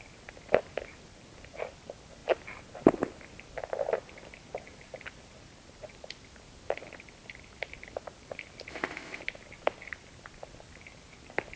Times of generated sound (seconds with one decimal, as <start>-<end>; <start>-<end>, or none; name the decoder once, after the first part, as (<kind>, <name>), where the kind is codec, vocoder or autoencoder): 8.7-9.2 (codec, ZipCodec)